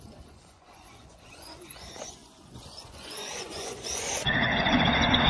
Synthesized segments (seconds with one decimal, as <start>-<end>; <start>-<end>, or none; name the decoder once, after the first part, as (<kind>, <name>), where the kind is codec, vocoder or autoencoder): 0.0-5.3 (vocoder, Vocos)